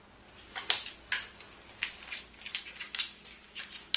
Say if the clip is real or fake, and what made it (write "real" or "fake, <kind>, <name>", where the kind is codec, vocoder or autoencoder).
real